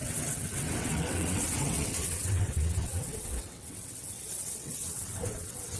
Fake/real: fake